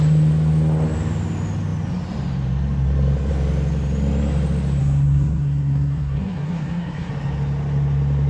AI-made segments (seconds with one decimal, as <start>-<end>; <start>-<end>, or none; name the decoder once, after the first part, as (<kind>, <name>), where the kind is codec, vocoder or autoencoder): 4.8-7.1 (codec, SNAC)